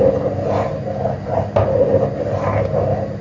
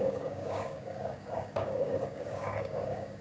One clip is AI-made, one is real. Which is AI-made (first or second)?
second